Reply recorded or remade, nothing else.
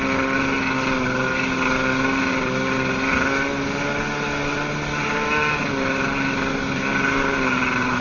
recorded